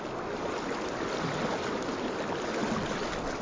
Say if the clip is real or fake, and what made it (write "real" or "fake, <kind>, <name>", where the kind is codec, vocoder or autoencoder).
real